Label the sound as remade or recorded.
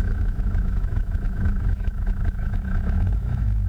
remade